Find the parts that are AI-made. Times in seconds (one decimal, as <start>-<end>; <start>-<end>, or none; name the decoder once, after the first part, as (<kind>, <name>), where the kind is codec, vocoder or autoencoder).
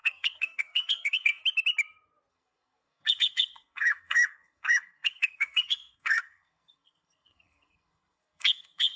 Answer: 0.0-1.4 (codec, SNAC); 2.3-9.0